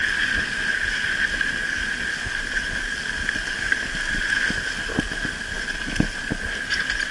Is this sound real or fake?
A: real